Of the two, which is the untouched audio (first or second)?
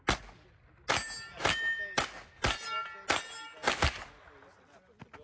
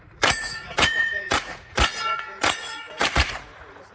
first